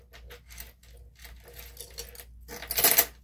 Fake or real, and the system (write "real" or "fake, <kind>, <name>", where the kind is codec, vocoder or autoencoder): real